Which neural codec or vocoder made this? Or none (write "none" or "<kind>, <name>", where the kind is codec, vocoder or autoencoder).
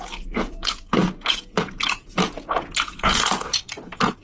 vocoder, Vocos